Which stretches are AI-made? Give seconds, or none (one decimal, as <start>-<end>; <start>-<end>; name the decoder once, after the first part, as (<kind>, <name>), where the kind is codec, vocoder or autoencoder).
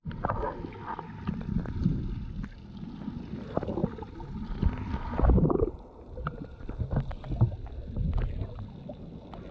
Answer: none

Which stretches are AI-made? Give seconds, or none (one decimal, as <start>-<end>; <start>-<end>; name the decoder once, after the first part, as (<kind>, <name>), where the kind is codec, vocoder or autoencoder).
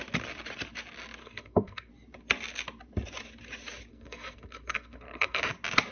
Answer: 1.2-1.9 (codec, SNAC); 3.9-5.4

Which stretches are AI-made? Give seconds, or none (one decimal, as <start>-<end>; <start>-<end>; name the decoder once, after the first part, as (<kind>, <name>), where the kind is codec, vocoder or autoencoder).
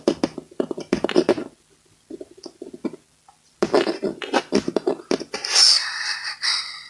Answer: none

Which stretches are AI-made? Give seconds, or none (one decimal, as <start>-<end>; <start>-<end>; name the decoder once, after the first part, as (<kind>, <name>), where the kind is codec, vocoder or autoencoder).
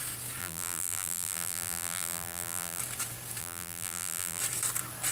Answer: 0.4-2.8 (vocoder, BigVGAN v2); 3.4-4.4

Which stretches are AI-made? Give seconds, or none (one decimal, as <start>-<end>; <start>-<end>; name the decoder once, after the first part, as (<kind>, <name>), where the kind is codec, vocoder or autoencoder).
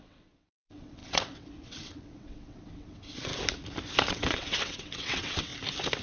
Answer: 0.0-3.3 (vocoder, WaveNeXt); 4.1-5.5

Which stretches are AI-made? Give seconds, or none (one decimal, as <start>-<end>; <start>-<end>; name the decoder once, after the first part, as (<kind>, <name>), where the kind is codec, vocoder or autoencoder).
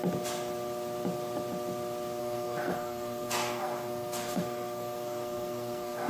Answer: 2.2-6.1 (codec, SNAC)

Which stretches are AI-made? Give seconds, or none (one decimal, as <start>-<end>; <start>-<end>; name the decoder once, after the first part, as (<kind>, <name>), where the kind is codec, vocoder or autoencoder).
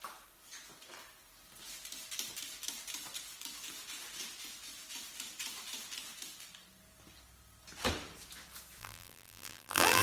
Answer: 8.8-10.0 (vocoder, BigVGAN v2)